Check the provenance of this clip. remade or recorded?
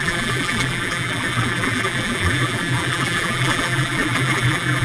remade